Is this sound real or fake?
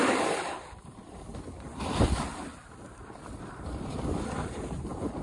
fake